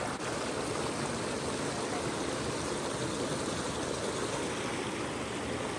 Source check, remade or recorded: recorded